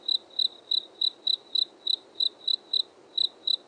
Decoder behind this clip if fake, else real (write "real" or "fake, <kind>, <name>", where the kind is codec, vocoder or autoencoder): real